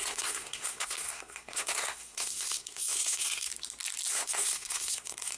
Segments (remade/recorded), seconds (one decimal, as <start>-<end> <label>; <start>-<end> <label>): 0.0-3.5 remade; 3.5-4.1 recorded; 4.1-5.4 remade